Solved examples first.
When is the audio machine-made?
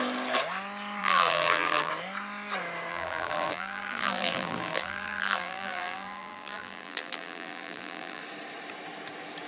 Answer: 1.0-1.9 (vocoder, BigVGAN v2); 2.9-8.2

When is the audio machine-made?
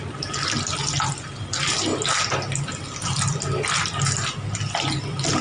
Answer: none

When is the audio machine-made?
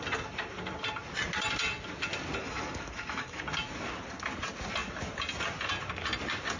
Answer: 2.4-3.4 (autoencoder, DAC-VAE)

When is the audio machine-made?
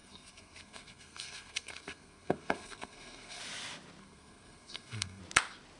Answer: 0.0-3.4 (codec, SNAC); 4.0-5.2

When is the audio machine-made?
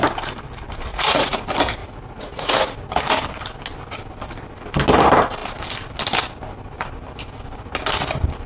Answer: 0.9-1.4 (vocoder, Vocos); 1.8-2.7